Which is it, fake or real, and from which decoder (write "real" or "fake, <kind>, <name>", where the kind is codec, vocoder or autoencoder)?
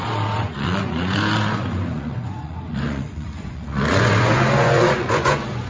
fake, vocoder, Vocos